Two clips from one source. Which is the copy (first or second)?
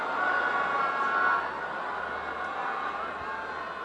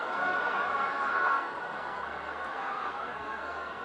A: second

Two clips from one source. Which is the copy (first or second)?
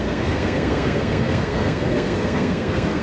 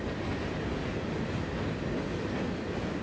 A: first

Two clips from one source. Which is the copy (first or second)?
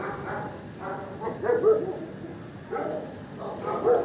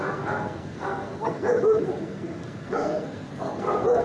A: second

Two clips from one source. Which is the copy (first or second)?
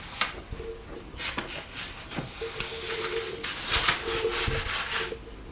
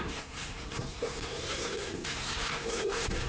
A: second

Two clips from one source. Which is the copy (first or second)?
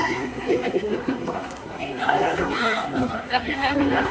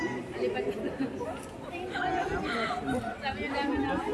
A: first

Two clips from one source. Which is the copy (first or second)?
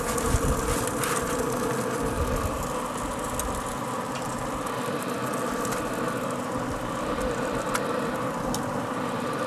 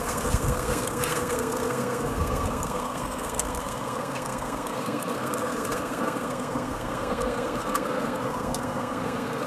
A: second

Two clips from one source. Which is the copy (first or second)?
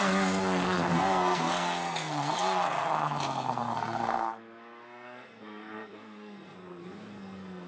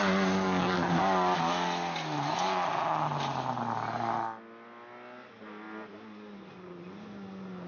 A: first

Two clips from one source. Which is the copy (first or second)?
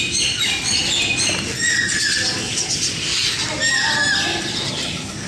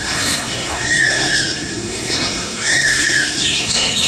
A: second